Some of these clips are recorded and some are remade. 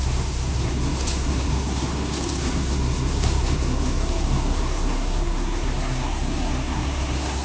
remade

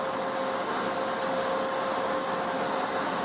recorded